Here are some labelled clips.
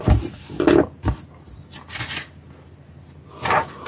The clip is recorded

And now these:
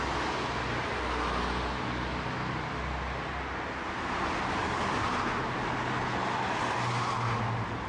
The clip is recorded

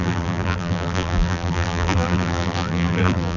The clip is remade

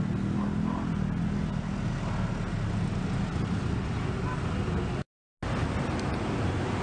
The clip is recorded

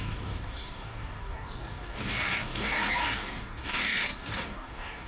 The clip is remade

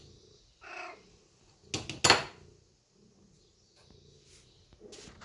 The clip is recorded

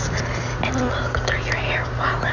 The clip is recorded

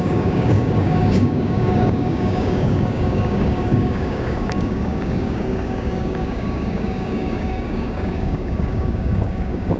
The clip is remade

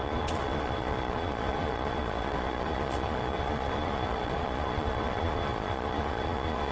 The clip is remade